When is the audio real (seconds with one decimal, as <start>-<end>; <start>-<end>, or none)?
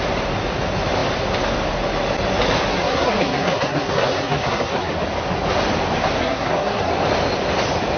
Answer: 0.0-2.7; 4.9-6.2; 6.9-8.0